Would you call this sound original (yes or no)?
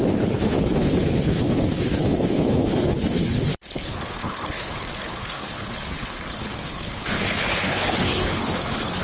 no